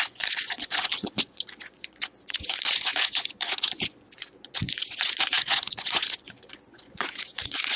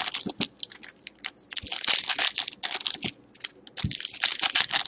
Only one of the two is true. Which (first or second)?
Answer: second